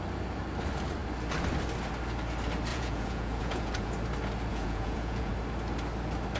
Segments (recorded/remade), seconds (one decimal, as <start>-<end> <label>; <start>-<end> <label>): 0.0-2.7 recorded; 2.7-3.9 remade; 3.9-4.5 recorded; 4.5-5.3 remade; 5.3-6.4 recorded